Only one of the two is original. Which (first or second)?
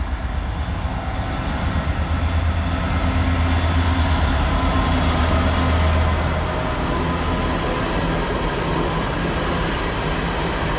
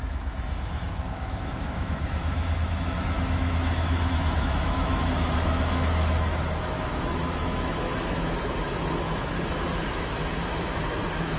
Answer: first